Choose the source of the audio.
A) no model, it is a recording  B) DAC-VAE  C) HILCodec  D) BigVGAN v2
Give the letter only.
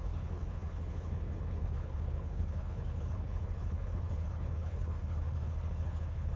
C